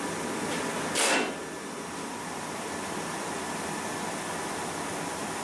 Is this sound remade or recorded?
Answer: recorded